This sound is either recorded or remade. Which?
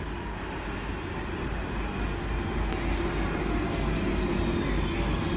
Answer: recorded